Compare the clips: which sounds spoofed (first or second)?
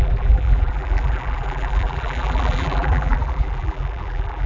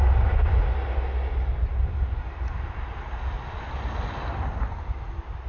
first